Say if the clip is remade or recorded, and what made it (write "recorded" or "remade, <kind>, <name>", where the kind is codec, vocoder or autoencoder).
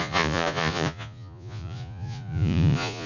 remade, vocoder, Vocos